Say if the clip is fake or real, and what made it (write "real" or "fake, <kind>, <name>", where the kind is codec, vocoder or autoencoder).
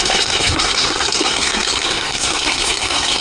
fake, codec, SNAC